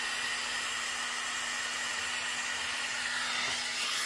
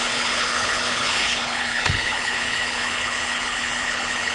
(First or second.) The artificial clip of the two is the second